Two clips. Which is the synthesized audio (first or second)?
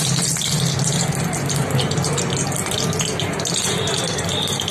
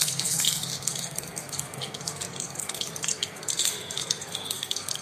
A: second